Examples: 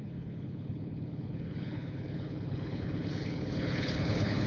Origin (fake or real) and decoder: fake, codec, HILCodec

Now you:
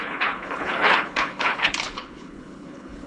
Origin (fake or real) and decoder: fake, codec, HILCodec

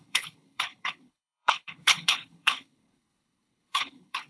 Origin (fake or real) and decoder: fake, codec, HILCodec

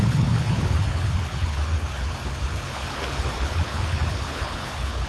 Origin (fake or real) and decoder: fake, codec, HILCodec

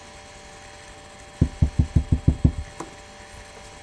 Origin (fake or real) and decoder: real